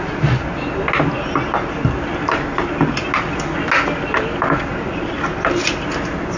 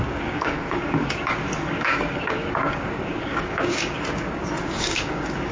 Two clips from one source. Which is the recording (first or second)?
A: first